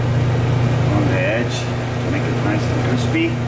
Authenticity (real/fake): real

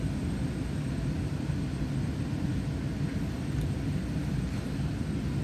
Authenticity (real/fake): real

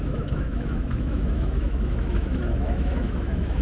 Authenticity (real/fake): fake